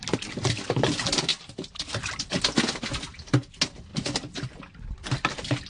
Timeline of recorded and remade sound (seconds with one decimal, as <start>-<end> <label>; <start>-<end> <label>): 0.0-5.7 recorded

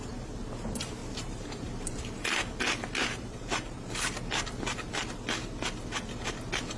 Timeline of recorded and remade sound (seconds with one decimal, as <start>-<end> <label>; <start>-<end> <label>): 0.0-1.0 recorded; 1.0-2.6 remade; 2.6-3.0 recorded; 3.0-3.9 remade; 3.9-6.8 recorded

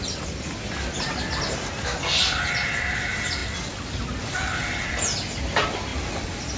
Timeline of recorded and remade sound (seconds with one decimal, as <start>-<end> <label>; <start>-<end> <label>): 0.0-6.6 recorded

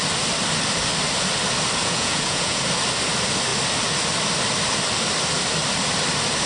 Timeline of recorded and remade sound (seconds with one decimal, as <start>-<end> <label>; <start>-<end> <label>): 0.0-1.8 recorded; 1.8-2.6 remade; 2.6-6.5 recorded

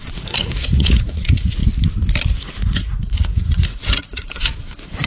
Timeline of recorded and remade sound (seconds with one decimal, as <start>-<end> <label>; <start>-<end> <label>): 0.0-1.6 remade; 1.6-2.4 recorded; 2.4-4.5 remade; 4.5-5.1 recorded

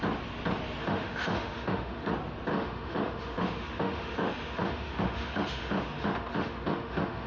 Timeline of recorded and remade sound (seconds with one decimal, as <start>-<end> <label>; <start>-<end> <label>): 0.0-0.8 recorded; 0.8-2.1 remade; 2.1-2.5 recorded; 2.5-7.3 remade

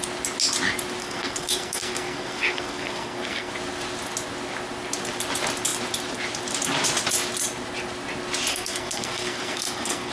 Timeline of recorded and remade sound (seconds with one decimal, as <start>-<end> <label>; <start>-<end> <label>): 0.0-1.0 recorded; 1.0-3.5 remade; 3.5-8.5 recorded; 8.5-10.1 remade